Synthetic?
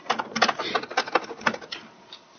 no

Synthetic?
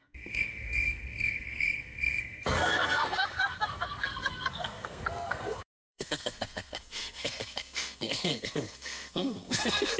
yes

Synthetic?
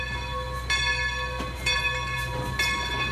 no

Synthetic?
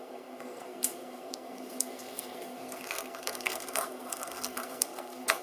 yes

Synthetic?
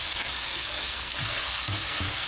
yes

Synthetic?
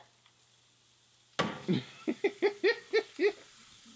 no